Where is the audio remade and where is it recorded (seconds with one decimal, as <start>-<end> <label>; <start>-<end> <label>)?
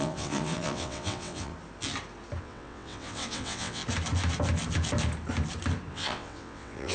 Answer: 0.0-1.5 remade; 1.5-2.4 recorded; 2.4-3.8 remade; 3.8-5.9 recorded; 5.9-6.9 remade